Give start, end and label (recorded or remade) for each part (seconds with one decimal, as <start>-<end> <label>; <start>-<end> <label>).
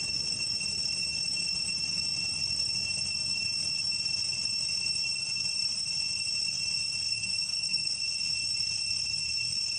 0.0-7.1 recorded; 7.1-8.0 remade; 8.0-9.8 recorded